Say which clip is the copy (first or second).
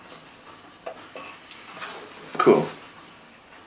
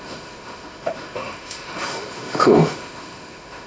second